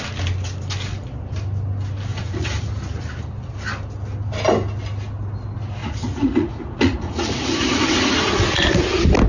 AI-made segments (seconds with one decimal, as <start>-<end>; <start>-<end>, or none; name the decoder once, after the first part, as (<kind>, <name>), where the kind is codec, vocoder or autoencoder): 2.1-2.7 (vocoder, Vocos); 5.8-8.3